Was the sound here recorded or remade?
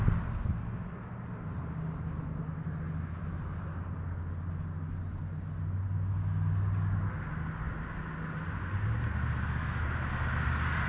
recorded